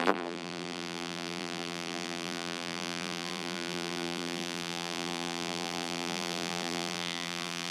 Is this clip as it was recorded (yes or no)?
no